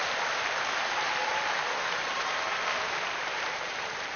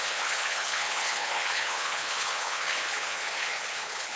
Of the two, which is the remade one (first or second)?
second